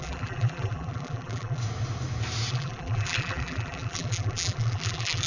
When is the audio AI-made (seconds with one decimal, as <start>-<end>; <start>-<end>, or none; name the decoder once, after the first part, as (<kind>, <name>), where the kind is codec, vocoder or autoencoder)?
0.0-1.6 (vocoder, BigVGAN v2); 2.5-5.3